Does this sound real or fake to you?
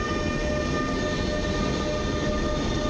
real